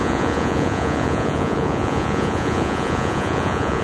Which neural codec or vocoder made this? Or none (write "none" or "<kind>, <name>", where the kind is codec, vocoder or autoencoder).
vocoder, Vocos